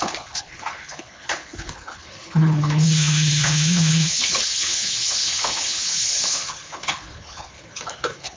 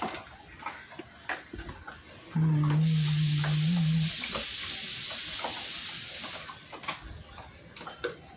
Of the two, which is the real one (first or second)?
second